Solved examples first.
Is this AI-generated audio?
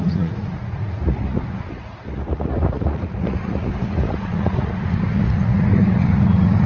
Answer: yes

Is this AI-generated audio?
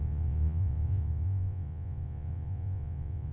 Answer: yes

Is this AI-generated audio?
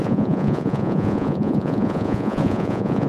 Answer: yes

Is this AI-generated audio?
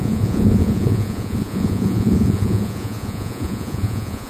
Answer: yes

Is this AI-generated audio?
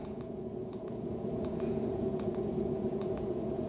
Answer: yes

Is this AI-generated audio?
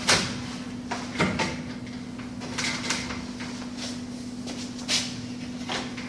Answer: no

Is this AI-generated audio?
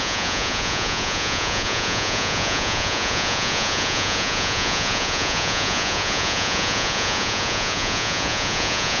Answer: yes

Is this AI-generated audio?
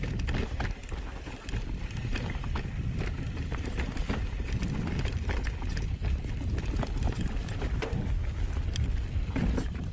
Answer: no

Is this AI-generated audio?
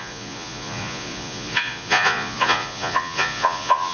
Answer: yes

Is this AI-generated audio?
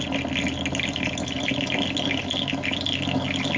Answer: no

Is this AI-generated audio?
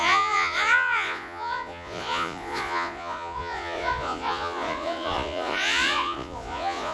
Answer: yes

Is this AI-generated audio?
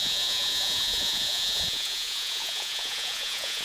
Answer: yes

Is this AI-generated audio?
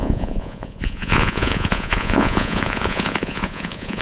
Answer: yes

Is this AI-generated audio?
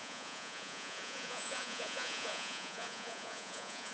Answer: yes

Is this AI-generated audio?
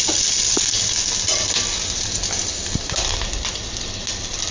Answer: no